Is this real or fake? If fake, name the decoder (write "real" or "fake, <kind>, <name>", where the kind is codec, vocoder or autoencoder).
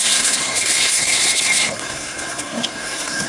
fake, codec, SNAC